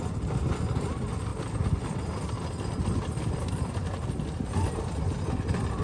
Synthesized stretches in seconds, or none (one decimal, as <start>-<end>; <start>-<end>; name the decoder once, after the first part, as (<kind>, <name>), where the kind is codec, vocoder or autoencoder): none